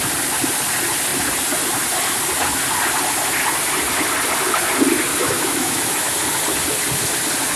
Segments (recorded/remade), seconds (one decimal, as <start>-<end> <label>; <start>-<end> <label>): 0.0-5.1 recorded; 5.1-6.1 remade; 6.1-7.6 recorded